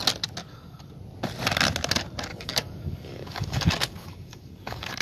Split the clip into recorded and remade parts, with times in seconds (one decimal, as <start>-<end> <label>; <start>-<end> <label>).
0.0-0.4 recorded; 0.4-0.9 remade; 0.9-2.3 recorded; 2.3-5.0 remade